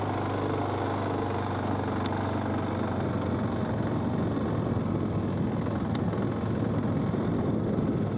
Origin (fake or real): real